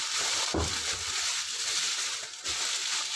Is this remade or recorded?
recorded